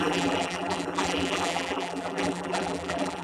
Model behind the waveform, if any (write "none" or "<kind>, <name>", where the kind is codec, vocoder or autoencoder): vocoder, BigVGAN v2